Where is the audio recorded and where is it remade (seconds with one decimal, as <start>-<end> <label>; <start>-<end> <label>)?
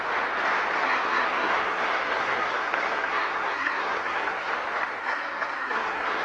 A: 0.0-0.8 recorded; 0.8-4.5 remade; 4.5-5.0 recorded; 5.0-6.2 remade